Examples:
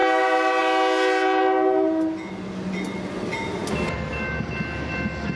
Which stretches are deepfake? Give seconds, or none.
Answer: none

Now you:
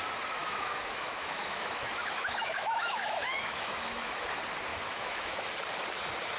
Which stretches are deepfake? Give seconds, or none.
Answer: 0.4-4.2 (autoencoder, DAC-VAE); 4.7-5.5

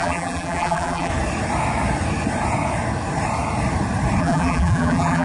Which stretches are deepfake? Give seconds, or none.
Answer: 0.0-1.1 (vocoder, BigVGAN v2); 4.2-5.2